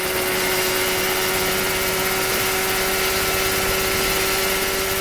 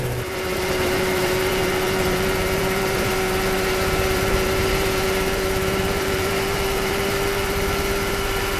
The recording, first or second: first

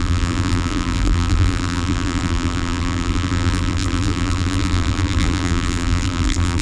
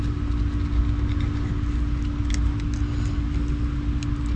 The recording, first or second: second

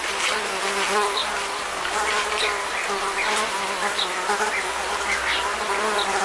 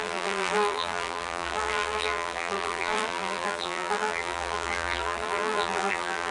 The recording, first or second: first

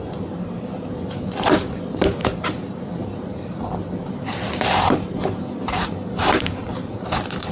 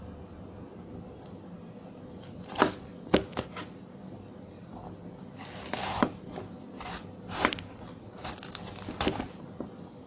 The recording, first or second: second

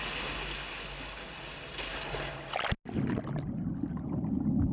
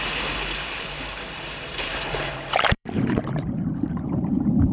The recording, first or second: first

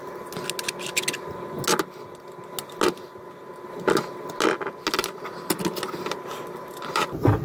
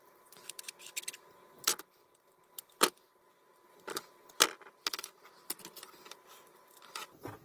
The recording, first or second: first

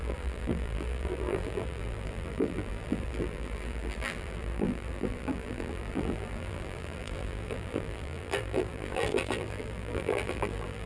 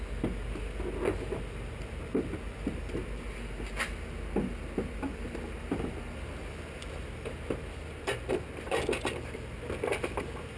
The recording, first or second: second